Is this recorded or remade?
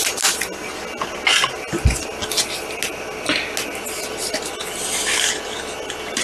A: recorded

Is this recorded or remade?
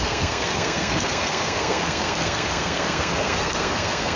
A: remade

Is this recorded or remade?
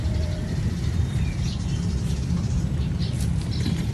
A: remade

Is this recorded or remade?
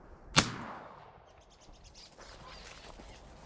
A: recorded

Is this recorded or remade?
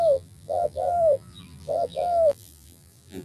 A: remade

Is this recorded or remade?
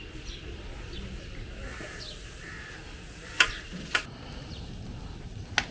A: recorded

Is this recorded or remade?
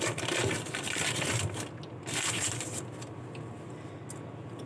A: recorded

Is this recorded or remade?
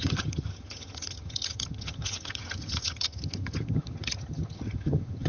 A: remade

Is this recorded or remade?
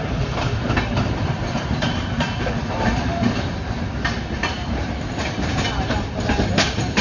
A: remade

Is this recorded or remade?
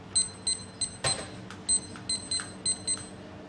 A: recorded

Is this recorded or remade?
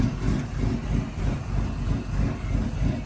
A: recorded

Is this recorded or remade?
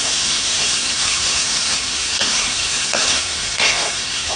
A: remade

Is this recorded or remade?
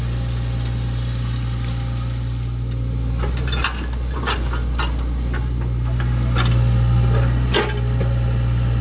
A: recorded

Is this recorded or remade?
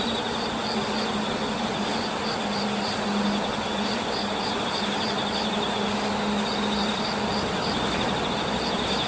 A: recorded